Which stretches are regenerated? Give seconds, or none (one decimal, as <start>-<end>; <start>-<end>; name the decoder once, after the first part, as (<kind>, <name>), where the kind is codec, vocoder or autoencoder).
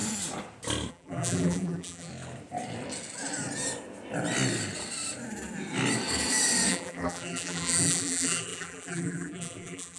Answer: 0.9-2.1 (vocoder, BigVGAN v2); 6.7-10.0